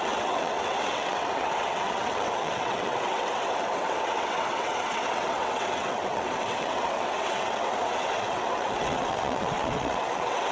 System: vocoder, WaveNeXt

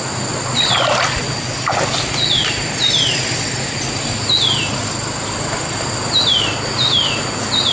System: none